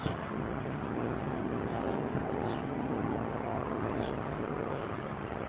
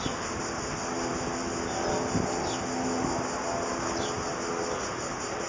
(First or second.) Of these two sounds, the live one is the second